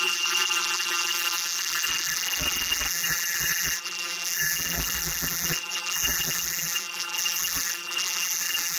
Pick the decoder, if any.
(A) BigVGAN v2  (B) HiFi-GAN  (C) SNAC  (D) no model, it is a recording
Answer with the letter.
A